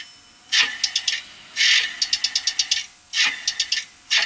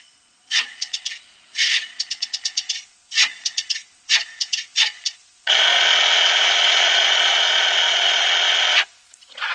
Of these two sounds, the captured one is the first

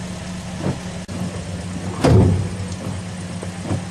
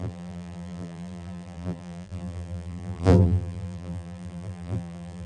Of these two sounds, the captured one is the first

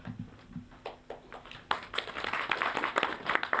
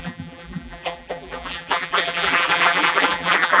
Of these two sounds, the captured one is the first